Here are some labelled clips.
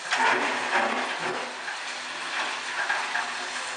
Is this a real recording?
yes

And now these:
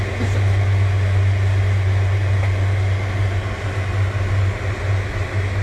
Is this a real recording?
yes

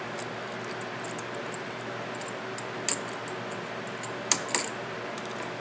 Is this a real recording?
yes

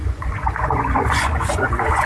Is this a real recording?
no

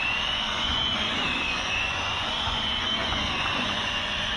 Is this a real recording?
no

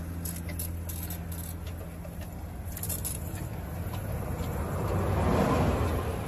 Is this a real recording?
yes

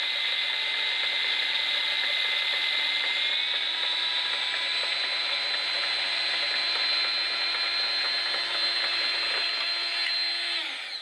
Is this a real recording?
yes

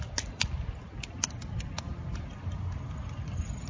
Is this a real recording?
yes